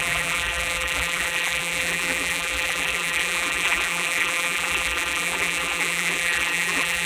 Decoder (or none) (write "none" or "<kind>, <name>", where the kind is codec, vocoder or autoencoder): vocoder, BigVGAN v2